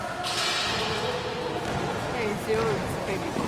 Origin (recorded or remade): recorded